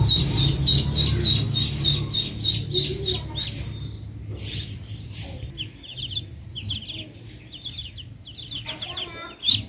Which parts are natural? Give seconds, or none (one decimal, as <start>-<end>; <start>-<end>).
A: 0.0-9.7